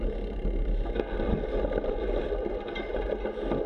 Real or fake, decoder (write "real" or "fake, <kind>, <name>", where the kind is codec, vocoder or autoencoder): real